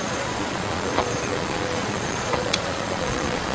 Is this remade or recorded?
remade